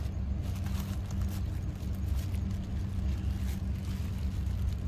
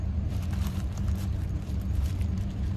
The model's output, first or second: second